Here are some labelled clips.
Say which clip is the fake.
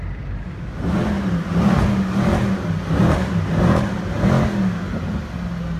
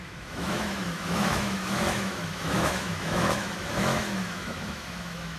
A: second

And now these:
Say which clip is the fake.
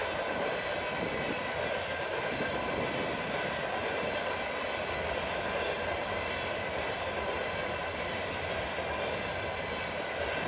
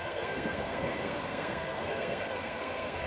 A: second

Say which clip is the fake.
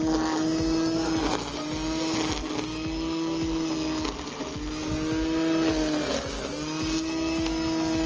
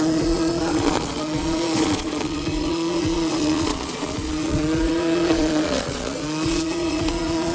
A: second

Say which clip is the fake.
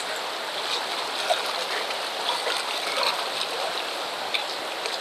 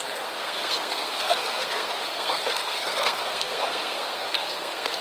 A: second